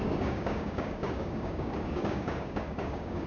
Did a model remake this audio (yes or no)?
yes